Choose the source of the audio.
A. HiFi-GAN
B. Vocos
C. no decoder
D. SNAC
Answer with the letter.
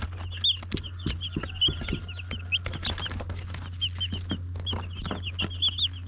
C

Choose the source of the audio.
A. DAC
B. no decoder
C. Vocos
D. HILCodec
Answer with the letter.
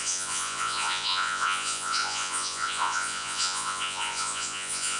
C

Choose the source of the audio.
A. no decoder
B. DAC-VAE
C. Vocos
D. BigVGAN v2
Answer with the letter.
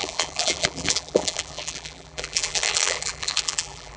D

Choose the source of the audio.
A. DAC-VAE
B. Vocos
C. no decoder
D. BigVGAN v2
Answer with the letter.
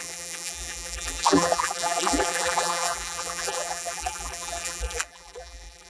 D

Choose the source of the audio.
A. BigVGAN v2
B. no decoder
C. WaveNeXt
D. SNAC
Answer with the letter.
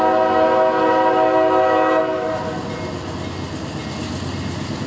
B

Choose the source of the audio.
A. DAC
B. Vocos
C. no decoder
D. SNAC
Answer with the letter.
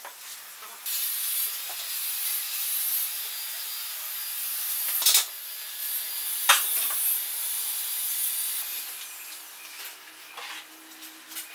C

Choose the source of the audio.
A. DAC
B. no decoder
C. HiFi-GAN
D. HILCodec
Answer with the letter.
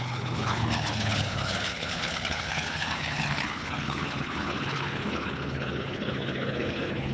D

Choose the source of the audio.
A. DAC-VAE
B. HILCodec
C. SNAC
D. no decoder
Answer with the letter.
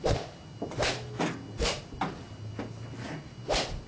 D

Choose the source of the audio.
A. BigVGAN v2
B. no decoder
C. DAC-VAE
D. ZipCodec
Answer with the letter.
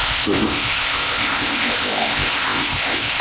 D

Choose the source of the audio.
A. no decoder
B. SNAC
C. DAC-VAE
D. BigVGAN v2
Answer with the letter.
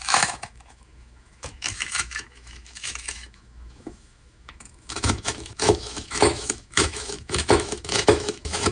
C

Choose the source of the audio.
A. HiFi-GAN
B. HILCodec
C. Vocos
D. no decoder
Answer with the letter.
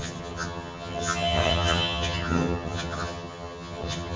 A